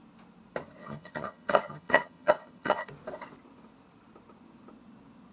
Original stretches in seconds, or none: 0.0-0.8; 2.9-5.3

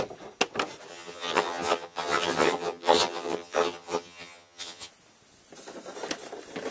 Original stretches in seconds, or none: 0.0-0.9; 4.9-6.7

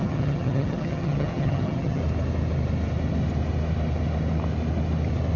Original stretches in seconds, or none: 2.0-5.4

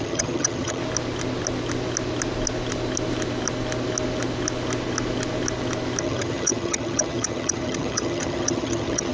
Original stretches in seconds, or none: 0.8-6.0